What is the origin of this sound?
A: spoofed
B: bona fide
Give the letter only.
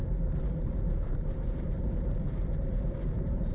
A